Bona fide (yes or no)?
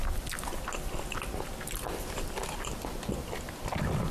yes